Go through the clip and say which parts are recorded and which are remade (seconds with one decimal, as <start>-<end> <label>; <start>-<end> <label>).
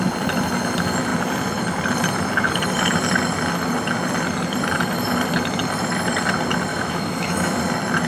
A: 0.0-6.7 recorded; 6.7-7.6 remade; 7.6-8.1 recorded